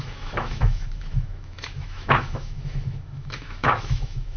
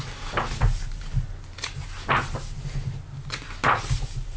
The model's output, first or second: first